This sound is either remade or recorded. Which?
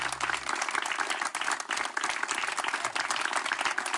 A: recorded